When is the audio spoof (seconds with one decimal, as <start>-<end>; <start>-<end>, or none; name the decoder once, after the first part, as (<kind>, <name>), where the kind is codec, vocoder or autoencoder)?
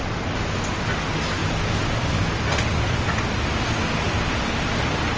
none